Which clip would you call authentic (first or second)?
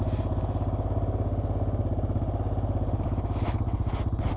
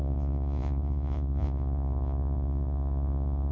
first